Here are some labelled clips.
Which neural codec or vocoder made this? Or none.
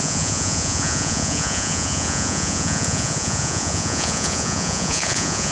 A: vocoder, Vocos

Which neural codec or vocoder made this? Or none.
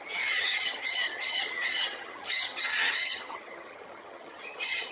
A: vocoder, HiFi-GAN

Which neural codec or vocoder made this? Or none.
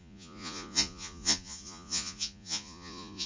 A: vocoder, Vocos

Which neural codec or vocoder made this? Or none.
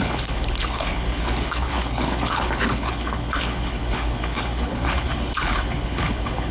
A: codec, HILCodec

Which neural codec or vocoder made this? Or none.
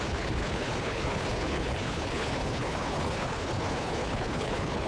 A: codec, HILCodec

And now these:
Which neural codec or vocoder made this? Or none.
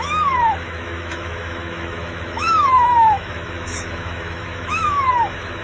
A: autoencoder, DAC-VAE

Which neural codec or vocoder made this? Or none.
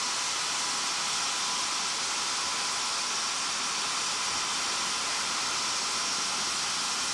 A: none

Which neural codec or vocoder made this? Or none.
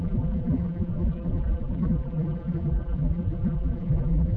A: vocoder, BigVGAN v2